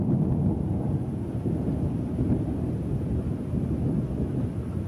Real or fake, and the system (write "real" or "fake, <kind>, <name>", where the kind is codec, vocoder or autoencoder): real